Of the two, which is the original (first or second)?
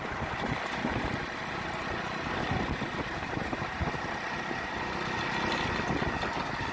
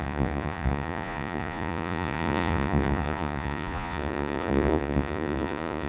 first